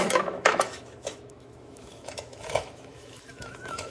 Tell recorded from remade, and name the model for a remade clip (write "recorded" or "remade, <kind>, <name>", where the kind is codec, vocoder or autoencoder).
remade, autoencoder, DAC-VAE